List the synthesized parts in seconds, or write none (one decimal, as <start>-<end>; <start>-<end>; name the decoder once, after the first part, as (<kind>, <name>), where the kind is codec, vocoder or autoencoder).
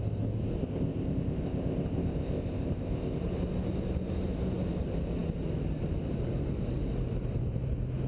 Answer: 0.6-3.2 (codec, ZipCodec)